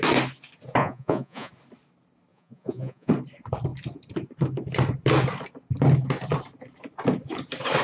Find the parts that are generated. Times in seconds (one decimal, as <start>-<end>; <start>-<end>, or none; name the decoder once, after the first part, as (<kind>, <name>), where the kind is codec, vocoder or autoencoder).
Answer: 0.8-1.5 (vocoder, Vocos); 2.3-3.1